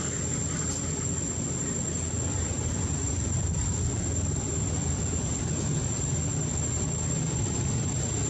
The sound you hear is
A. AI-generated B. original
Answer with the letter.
B